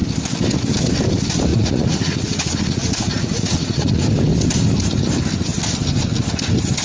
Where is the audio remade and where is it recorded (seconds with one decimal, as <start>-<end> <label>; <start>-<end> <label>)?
0.0-1.5 recorded; 1.5-4.0 remade; 4.0-6.8 recorded